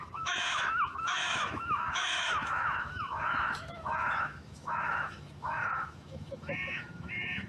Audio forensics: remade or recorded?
remade